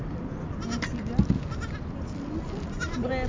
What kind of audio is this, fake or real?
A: real